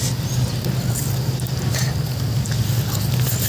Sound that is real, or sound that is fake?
real